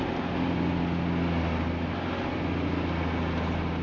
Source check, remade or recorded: recorded